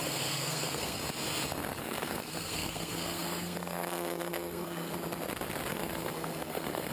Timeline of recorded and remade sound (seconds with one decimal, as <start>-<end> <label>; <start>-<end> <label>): 0.0-1.0 remade; 1.0-1.8 recorded; 1.8-4.9 remade; 4.9-5.7 recorded; 5.7-6.9 remade

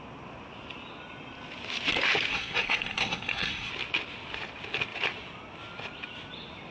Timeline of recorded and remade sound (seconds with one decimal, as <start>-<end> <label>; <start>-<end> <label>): 0.0-2.3 recorded; 2.3-3.7 remade; 3.7-6.7 recorded

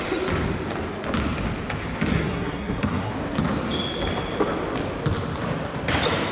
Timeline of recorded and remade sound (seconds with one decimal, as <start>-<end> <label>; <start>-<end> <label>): 0.0-2.1 recorded; 2.1-3.1 remade; 3.1-6.3 recorded

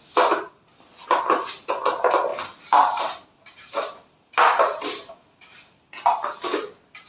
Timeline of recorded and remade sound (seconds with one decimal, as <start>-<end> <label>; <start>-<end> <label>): 0.0-7.1 recorded

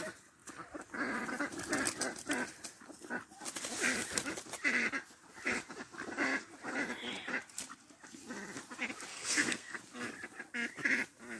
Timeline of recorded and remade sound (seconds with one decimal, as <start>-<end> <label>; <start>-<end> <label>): 0.0-9.1 recorded; 9.1-9.8 remade; 9.8-11.4 recorded